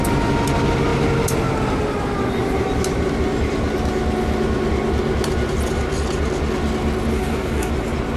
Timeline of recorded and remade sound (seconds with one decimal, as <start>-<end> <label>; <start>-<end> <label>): 0.0-7.1 recorded; 7.1-7.7 remade; 7.7-8.2 recorded